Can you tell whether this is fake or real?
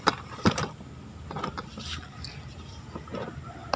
real